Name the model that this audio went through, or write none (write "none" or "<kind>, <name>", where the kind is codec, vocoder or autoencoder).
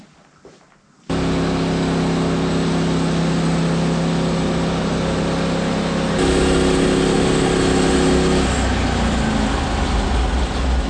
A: none